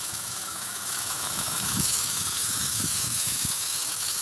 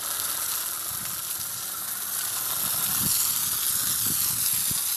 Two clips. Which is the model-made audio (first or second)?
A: first